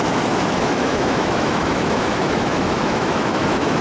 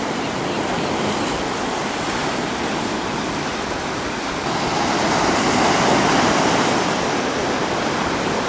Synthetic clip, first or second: first